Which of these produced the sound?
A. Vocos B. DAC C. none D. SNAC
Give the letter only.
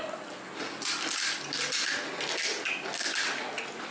C